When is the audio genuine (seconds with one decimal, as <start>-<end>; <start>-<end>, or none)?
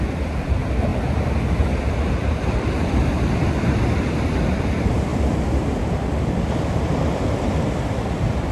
0.9-1.8; 5.1-6.2